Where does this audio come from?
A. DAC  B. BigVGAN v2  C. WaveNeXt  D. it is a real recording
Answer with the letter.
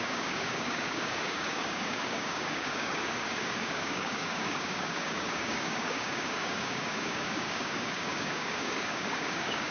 A